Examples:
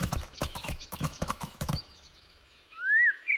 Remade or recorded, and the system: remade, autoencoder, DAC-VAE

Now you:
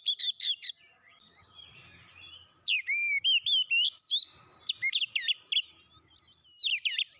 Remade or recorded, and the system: recorded